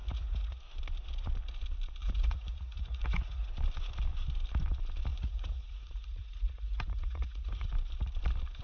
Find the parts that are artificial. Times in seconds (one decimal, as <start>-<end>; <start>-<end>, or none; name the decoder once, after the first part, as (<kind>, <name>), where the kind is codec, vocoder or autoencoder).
0.0-0.6 (vocoder, Vocos); 2.0-3.5; 5.1-7.7

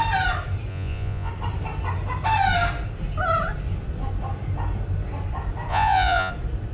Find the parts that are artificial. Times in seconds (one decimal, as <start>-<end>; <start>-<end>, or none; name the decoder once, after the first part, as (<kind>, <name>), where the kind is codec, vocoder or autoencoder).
0.7-1.3 (vocoder, Vocos); 5.7-6.3

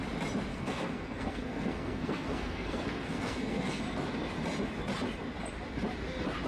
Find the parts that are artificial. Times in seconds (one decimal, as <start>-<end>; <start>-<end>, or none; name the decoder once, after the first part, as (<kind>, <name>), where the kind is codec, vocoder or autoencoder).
0.5-3.8 (codec, SNAC)

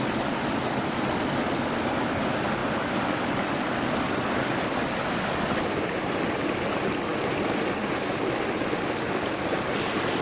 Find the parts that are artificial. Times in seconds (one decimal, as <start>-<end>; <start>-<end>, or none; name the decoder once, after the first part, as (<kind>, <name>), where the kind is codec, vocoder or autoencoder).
none

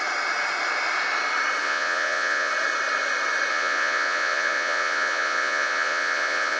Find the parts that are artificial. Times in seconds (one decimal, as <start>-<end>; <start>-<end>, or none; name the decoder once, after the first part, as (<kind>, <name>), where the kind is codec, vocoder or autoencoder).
1.6-2.5 (vocoder, Vocos); 3.5-6.6

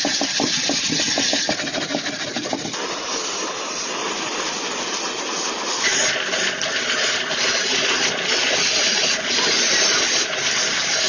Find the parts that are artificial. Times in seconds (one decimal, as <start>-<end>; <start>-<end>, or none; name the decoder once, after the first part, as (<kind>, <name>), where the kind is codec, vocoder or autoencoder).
none

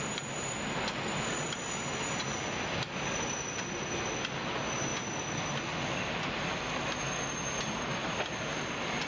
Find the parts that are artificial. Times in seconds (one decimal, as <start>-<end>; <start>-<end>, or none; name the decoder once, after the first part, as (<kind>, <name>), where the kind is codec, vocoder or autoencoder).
none

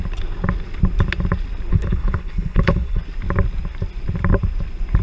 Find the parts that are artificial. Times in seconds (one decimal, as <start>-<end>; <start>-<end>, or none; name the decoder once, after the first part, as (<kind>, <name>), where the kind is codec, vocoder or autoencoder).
1.7-3.0 (codec, HILCodec)